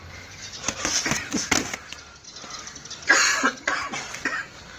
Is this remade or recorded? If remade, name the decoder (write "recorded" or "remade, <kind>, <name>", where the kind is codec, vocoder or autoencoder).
recorded